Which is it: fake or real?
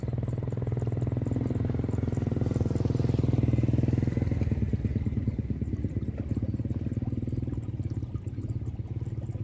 real